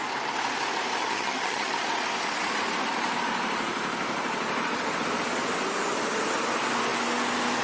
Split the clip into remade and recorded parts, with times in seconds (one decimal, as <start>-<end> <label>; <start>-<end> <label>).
0.0-1.0 recorded; 1.0-1.7 remade; 1.7-7.6 recorded